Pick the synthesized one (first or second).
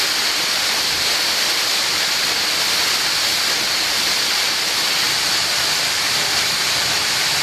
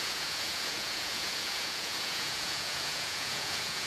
second